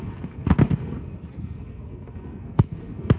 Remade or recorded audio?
remade